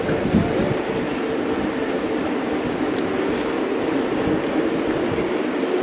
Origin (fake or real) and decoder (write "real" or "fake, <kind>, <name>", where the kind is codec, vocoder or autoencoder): real